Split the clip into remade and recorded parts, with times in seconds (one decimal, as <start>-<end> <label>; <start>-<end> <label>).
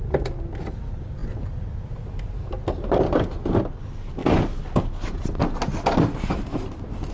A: 0.0-7.1 recorded